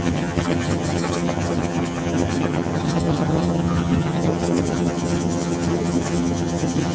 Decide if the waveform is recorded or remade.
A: remade